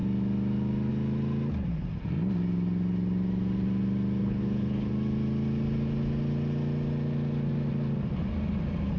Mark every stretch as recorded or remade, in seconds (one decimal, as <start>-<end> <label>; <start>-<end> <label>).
0.0-4.2 recorded; 4.2-4.9 remade; 4.9-9.0 recorded